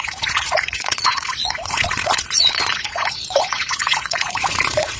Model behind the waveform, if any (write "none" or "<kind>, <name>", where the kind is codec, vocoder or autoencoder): vocoder, Vocos